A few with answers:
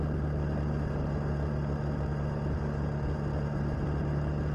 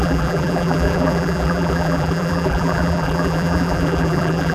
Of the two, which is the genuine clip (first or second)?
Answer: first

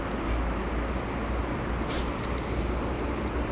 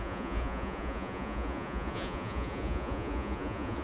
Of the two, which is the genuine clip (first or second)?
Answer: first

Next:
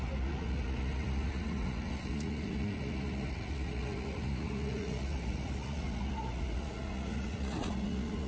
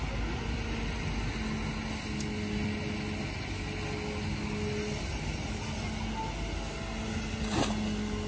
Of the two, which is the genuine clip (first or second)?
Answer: second